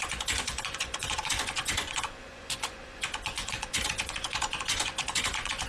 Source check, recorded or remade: remade